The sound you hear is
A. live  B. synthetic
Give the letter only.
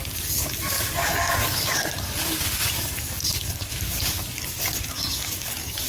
B